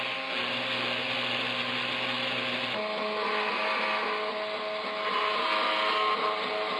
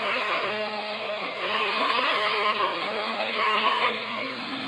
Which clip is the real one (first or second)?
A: first